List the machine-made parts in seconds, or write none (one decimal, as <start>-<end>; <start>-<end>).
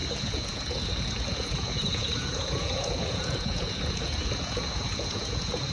0.0-5.7